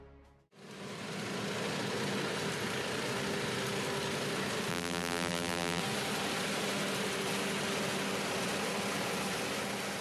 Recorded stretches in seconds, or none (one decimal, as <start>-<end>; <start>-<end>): 0.0-4.7; 5.8-10.0